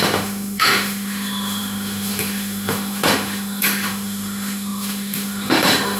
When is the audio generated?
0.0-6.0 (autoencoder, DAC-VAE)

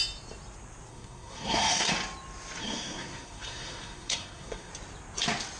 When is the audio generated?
0.9-1.9 (codec, SNAC); 2.6-4.7

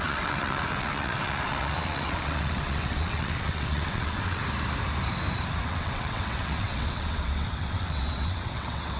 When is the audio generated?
0.0-4.4 (vocoder, WaveNeXt); 5.6-9.0

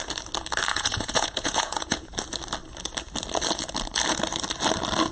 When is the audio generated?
0.7-2.1 (vocoder, Vocos)

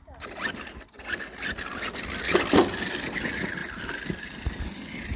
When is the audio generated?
none

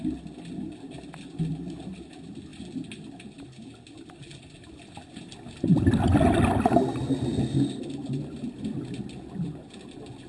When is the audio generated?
none

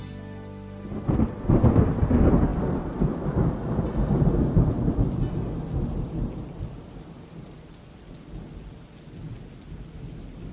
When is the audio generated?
none